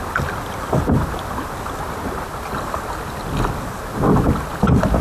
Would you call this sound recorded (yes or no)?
yes